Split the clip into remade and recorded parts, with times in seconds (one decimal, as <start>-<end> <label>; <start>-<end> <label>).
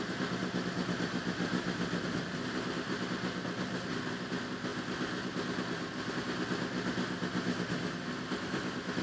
0.0-9.0 recorded